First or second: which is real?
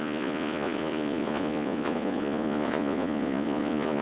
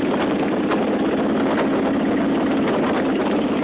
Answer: second